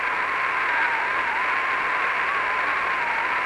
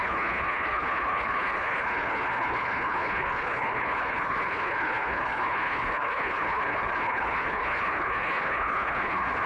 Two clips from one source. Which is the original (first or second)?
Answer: first